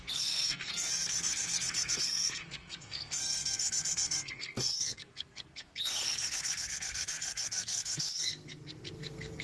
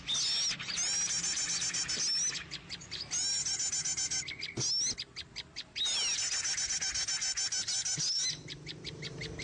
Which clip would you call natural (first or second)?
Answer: second